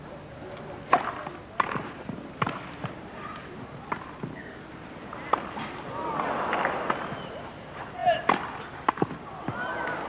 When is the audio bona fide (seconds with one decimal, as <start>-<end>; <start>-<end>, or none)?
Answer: 0.0-10.1